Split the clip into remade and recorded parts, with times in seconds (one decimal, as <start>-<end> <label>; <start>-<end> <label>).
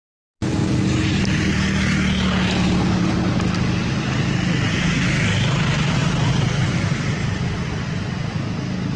0.0-9.0 recorded